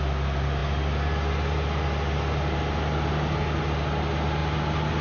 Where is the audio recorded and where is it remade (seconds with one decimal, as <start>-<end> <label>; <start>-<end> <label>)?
0.0-5.0 recorded